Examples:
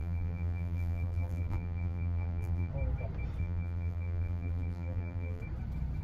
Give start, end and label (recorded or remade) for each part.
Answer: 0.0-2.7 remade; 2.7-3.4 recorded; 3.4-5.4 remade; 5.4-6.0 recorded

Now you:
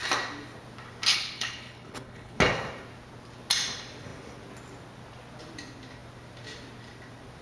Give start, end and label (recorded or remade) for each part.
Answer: 0.0-1.1 recorded; 1.1-2.4 remade; 2.4-7.4 recorded

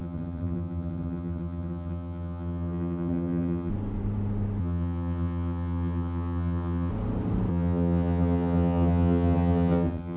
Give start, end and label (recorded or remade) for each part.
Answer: 0.0-3.7 remade; 3.7-4.6 recorded; 4.6-6.9 remade; 6.9-7.5 recorded; 7.5-10.2 remade

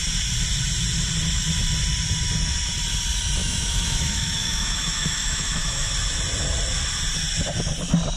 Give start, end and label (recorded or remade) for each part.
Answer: 0.0-3.4 recorded; 3.4-5.9 remade; 5.9-8.2 recorded

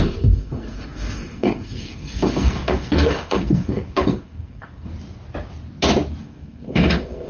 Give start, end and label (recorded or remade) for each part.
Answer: 0.0-4.9 remade; 4.9-6.2 recorded; 6.2-7.3 remade

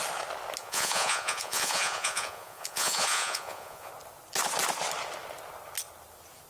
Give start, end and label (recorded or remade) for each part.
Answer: 0.0-0.6 recorded; 0.6-3.9 remade; 3.9-6.5 recorded